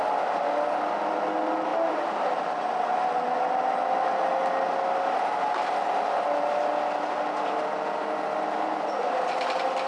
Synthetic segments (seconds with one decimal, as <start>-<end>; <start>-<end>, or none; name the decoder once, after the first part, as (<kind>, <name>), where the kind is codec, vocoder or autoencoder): none

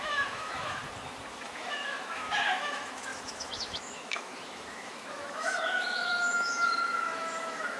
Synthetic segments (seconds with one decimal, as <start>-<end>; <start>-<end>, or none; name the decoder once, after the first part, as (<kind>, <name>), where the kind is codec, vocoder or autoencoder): 0.0-0.8 (autoencoder, DAC-VAE); 1.3-7.8

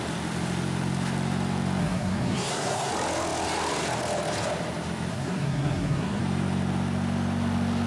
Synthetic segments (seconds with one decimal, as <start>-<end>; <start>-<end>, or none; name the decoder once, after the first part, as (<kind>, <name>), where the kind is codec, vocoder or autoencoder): 1.8-2.9 (codec, SNAC); 5.1-6.2

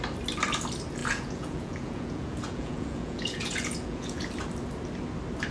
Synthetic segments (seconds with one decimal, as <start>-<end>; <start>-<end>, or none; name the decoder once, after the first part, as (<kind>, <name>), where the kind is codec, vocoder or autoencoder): 1.0-4.3 (vocoder, Vocos)

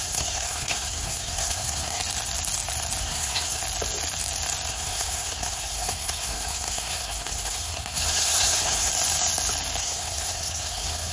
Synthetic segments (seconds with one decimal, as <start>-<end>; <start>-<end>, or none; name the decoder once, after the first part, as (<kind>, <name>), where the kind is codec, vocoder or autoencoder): 0.0-2.0 (codec, SNAC); 3.0-3.6; 4.7-8.9; 9.8-11.1

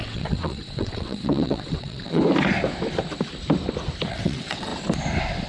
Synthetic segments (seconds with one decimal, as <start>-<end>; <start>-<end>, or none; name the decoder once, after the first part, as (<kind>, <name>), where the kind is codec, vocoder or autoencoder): 0.0-2.2 (vocoder, WaveNeXt); 4.1-4.7

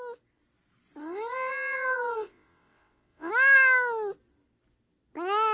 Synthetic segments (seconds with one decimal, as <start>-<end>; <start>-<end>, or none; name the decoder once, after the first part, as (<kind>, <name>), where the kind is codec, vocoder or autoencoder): 1.0-3.3 (vocoder, WaveNeXt)